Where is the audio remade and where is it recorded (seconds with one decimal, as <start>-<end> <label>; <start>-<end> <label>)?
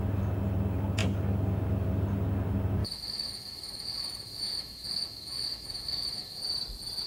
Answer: 0.0-2.8 recorded; 2.8-6.4 remade; 6.4-7.1 recorded